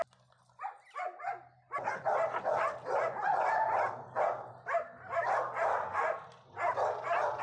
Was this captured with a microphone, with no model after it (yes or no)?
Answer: yes